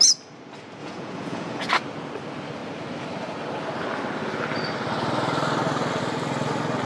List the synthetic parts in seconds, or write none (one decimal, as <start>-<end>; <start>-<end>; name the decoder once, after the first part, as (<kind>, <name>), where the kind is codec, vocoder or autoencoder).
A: 0.8-1.7 (vocoder, Vocos)